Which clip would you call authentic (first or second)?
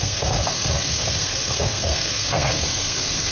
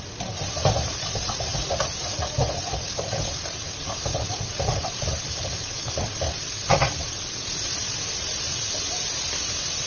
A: second